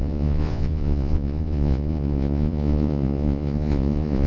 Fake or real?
fake